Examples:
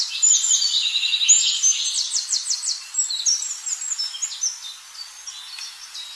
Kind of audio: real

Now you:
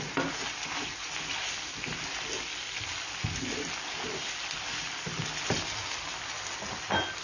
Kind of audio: real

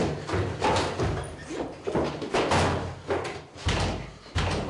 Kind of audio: real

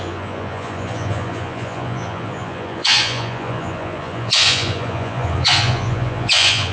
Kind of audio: fake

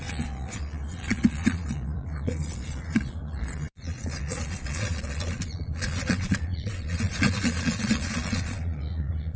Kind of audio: fake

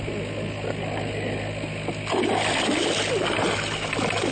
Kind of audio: real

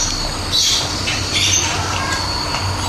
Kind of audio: real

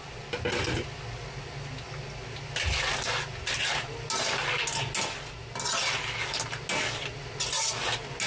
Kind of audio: real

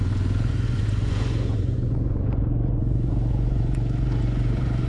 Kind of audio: fake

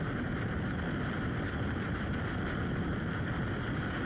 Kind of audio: real